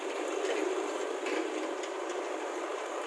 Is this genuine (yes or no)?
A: yes